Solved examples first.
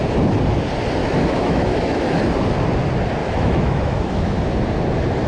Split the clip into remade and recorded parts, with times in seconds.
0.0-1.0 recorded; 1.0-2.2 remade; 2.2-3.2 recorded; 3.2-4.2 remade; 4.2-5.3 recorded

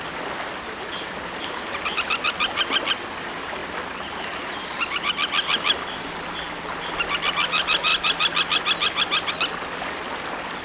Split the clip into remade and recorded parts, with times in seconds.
0.0-10.6 recorded

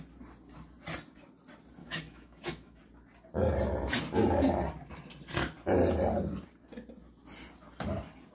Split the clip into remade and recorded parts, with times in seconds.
0.0-1.8 recorded; 1.8-2.8 remade; 2.8-8.3 recorded

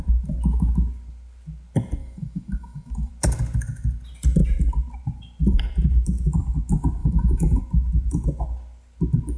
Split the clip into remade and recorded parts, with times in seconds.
0.0-2.0 recorded; 2.0-3.1 remade; 3.1-7.0 recorded; 7.0-7.6 remade; 7.6-9.4 recorded

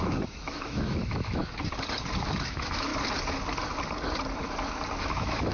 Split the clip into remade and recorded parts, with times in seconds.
0.0-1.4 remade; 1.4-2.5 recorded; 2.5-2.9 remade; 2.9-5.0 recorded; 5.0-5.5 remade

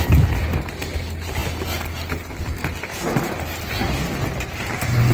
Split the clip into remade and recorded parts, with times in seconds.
0.0-5.1 recorded